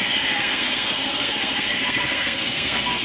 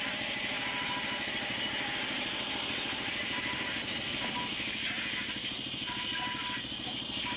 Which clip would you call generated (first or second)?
first